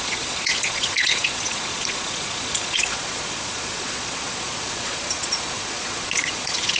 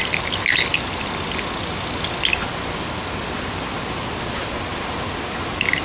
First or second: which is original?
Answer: second